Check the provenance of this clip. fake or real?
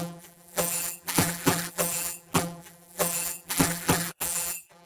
fake